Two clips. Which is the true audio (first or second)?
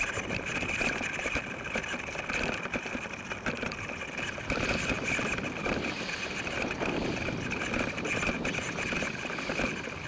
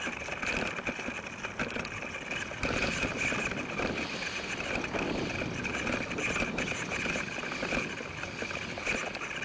second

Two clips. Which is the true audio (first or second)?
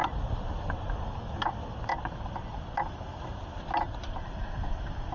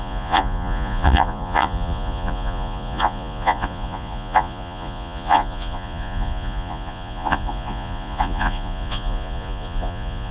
first